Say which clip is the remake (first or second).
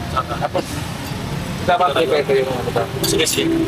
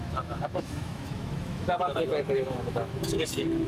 second